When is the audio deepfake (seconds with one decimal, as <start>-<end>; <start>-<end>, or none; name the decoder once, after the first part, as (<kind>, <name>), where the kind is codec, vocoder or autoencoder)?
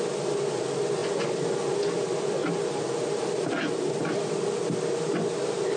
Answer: none